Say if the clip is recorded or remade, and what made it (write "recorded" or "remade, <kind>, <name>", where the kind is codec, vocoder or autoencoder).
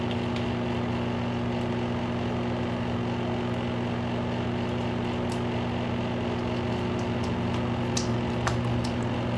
recorded